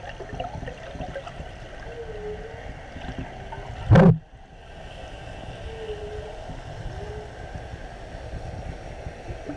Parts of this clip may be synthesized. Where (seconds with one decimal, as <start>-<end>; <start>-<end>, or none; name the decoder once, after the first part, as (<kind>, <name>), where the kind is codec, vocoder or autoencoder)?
none